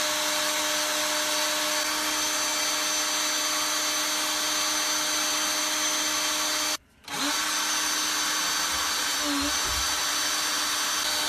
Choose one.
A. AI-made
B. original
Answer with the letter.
B